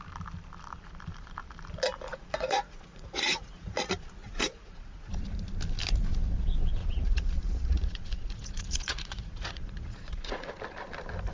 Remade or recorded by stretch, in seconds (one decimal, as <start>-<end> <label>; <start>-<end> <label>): 0.0-2.1 recorded; 2.1-3.7 remade; 3.7-4.2 recorded; 4.2-5.1 remade; 5.1-6.8 recorded; 6.8-10.5 remade; 10.5-11.3 recorded